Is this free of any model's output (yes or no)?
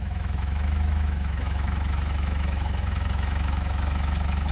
no